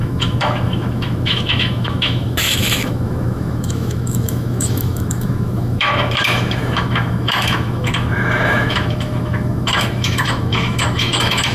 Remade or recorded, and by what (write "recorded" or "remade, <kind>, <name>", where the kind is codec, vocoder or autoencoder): remade, autoencoder, DAC-VAE